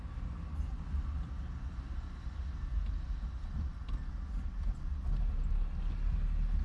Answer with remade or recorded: recorded